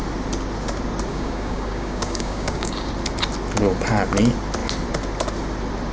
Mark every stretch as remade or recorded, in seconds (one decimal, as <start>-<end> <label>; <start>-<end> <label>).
0.0-1.1 recorded; 1.1-2.9 remade; 2.9-5.9 recorded